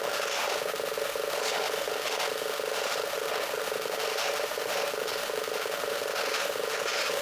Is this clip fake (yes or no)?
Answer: yes